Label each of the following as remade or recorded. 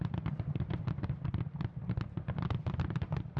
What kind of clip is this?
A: recorded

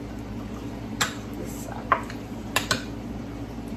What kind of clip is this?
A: recorded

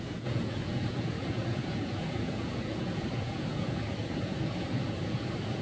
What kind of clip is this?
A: remade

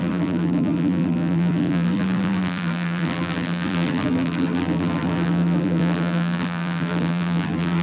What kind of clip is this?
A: remade